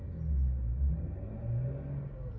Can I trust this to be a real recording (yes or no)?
yes